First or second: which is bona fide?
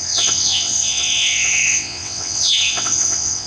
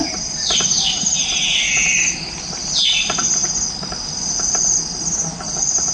second